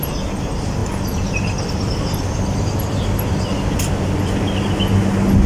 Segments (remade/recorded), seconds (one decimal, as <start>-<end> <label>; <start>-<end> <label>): 0.0-0.8 recorded; 0.8-3.4 remade; 3.4-5.5 recorded